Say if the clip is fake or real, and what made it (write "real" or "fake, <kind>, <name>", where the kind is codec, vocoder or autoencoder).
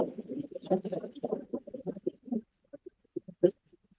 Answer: real